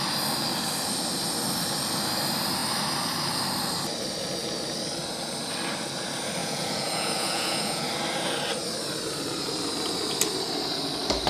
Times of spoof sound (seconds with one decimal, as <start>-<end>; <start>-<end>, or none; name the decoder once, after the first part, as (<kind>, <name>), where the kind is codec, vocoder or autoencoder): 6.4-7.9 (vocoder, Vocos)